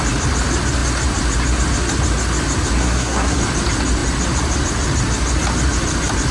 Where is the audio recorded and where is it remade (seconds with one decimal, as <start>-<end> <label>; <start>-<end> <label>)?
0.0-2.8 recorded; 2.8-3.4 remade; 3.4-6.3 recorded